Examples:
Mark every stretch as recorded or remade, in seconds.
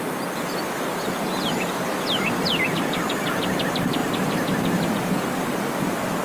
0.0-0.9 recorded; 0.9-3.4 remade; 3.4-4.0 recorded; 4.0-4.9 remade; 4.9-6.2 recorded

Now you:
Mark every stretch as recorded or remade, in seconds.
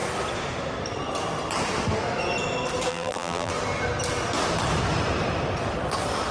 0.0-2.9 recorded; 2.9-3.5 remade; 3.5-6.3 recorded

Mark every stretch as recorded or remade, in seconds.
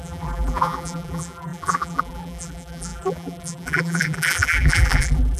0.0-5.4 remade